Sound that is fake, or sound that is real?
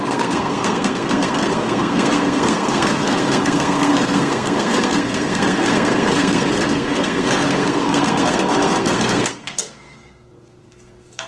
fake